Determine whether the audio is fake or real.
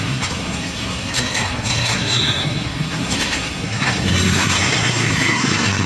fake